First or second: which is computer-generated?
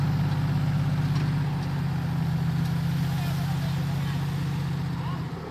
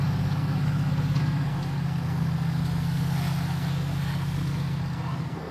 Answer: second